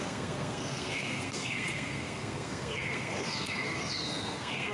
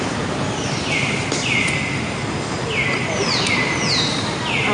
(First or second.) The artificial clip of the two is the first